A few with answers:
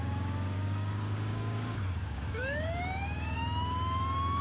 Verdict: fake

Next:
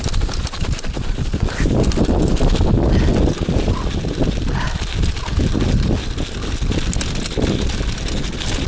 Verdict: real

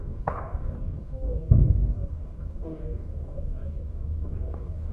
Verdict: fake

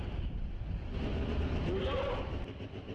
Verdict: real